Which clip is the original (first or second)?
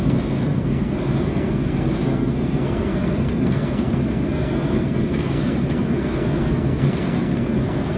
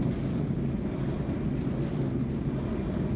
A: second